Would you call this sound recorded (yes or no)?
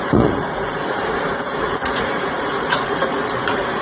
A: no